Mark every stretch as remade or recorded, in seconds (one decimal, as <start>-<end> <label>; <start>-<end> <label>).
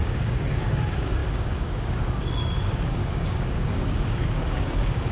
0.0-5.1 remade